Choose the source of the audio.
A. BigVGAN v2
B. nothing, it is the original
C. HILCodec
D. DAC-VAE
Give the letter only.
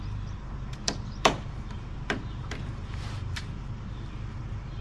A